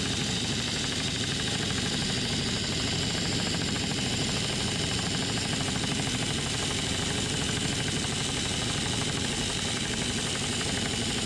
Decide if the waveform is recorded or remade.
recorded